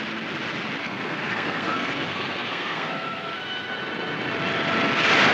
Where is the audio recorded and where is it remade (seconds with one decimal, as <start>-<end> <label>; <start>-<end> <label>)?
0.0-0.8 recorded; 0.8-3.3 remade; 3.3-5.3 recorded